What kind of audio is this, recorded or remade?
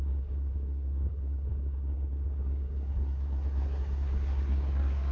remade